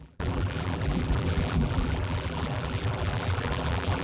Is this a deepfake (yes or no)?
yes